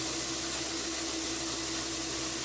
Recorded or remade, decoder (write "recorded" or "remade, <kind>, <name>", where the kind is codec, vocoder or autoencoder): recorded